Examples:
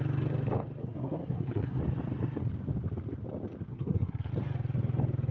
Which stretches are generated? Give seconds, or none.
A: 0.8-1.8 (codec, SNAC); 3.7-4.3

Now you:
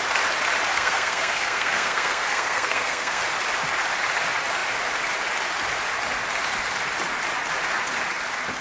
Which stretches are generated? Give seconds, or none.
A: 0.7-3.2 (codec, SNAC)

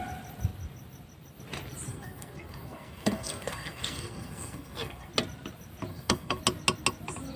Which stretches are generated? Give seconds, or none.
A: 1.9-5.1 (codec, SNAC); 5.9-6.4